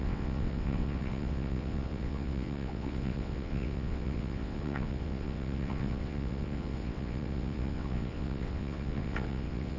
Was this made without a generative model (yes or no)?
no